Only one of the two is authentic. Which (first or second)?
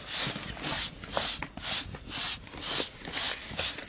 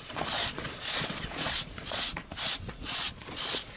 first